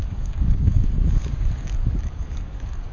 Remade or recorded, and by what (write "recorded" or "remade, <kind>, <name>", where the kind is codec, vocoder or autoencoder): remade, codec, DAC